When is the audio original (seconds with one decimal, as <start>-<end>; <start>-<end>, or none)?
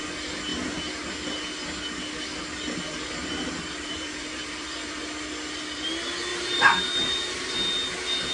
0.0-0.5; 1.1-3.2; 5.0-6.3; 7.5-8.3